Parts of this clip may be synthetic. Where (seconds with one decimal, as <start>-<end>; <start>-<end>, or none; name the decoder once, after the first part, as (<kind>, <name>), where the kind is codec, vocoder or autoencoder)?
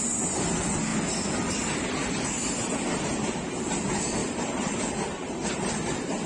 4.2-4.8 (vocoder, BigVGAN v2)